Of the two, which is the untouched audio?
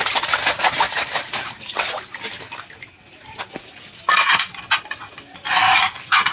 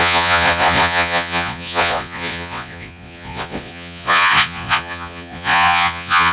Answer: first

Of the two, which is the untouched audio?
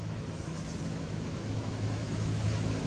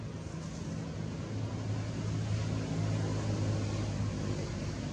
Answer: second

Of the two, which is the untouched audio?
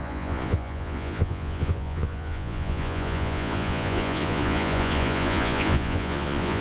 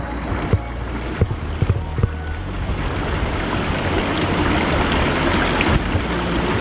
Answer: second